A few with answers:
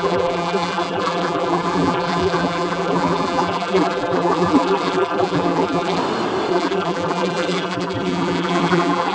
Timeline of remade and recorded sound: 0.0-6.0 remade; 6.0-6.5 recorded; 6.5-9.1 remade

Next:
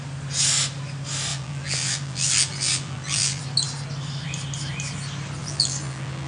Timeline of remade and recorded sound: 0.0-1.3 recorded; 1.3-3.4 remade; 3.4-5.4 recorded; 5.4-6.3 remade

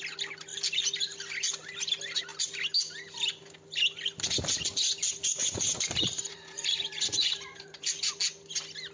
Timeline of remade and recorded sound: 0.0-5.4 recorded; 5.4-8.2 remade; 8.2-8.9 recorded

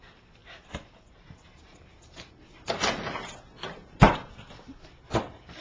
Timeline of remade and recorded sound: 0.0-0.4 recorded; 0.4-1.9 remade; 1.9-5.6 recorded